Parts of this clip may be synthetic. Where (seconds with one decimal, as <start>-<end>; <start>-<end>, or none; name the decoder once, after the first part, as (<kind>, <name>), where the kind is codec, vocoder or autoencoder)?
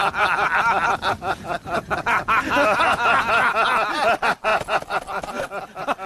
none